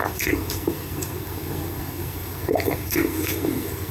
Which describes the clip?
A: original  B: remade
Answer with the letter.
B